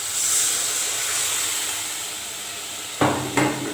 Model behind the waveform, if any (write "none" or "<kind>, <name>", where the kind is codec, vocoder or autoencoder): none